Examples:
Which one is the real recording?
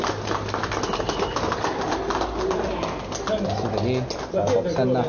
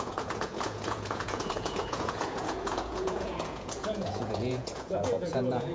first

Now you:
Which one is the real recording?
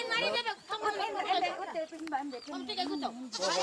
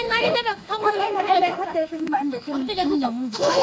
first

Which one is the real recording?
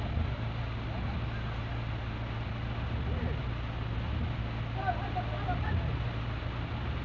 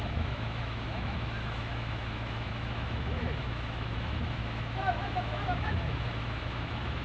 first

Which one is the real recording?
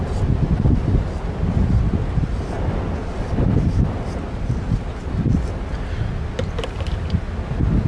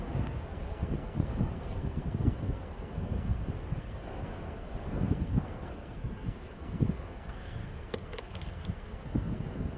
first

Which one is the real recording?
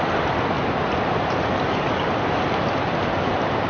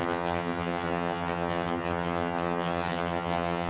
first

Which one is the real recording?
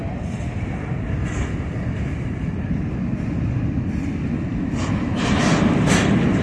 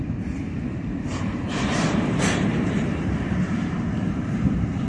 first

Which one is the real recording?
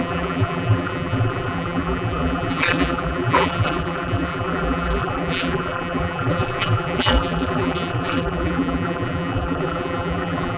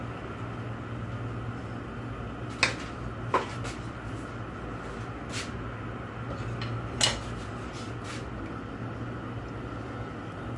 second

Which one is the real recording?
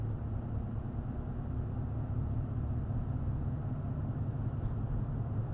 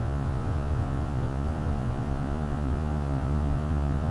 first